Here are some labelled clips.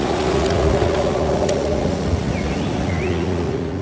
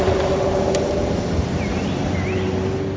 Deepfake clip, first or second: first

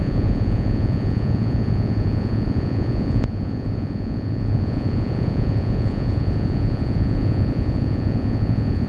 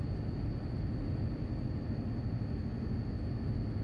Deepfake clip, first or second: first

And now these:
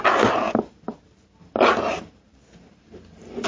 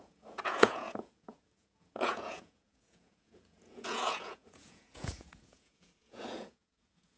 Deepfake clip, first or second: second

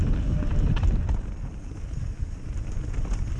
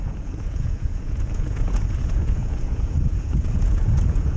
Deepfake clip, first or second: second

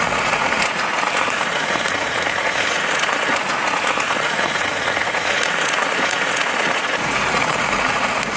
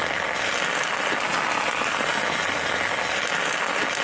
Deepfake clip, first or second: first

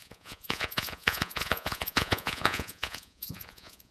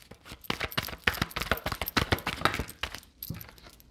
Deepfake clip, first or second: first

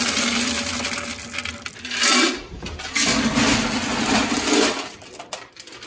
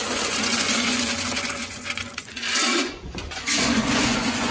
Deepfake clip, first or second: second